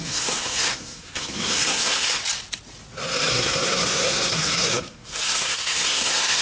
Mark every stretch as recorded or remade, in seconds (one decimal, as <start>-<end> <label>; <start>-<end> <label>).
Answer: 0.0-2.2 remade; 2.2-3.3 recorded; 3.3-6.4 remade